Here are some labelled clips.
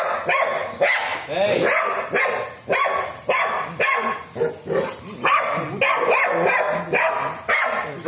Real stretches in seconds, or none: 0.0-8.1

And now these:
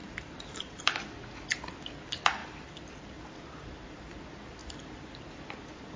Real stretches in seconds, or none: 0.8-6.0